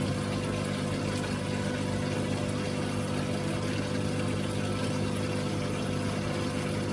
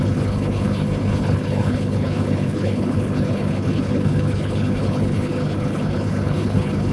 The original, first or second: first